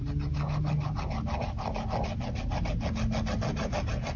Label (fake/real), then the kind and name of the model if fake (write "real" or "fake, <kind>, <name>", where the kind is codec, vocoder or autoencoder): real